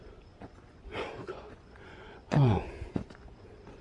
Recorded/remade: remade